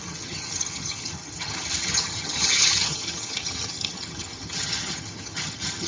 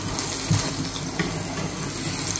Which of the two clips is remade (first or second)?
first